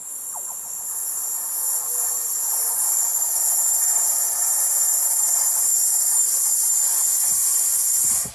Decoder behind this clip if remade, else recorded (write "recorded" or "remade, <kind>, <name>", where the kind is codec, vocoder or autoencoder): recorded